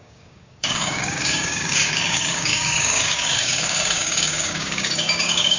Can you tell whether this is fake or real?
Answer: fake